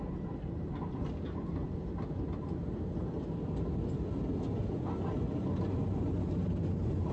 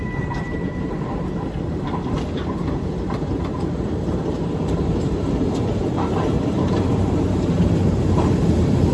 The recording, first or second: first